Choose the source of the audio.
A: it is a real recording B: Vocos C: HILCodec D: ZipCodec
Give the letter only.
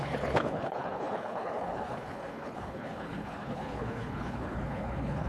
C